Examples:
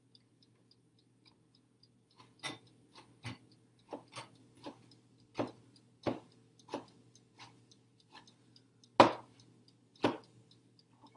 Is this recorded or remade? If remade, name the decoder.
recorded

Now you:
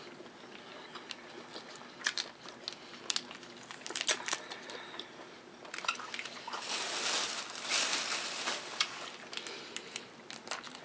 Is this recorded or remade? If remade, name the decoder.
recorded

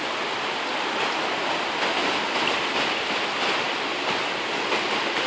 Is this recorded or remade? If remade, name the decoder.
recorded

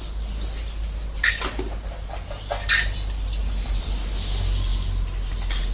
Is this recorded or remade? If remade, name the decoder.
recorded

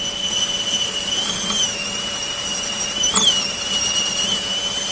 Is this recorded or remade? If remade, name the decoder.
recorded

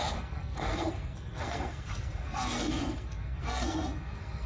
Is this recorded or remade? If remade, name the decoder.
remade, codec, SNAC